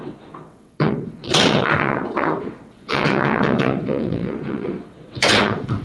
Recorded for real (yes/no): no